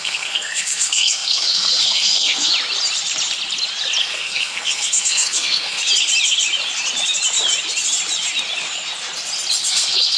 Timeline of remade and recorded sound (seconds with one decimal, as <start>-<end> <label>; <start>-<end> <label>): 0.0-2.5 remade; 2.5-4.0 recorded; 4.0-5.8 remade; 5.8-9.7 recorded; 9.7-10.2 remade